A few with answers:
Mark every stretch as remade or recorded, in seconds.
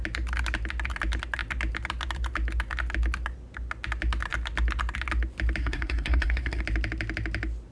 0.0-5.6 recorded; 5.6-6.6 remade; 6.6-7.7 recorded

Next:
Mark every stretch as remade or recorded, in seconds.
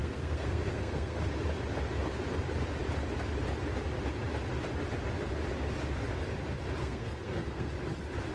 0.0-1.2 remade; 1.2-6.8 recorded; 6.8-7.7 remade; 7.7-8.3 recorded